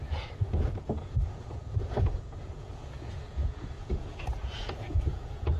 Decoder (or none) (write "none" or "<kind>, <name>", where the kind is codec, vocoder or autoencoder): vocoder, Vocos